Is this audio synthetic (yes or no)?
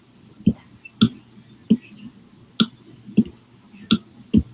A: no